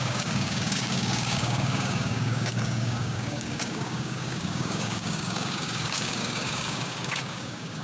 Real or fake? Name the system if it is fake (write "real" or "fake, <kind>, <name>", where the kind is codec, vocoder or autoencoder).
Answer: fake, codec, DAC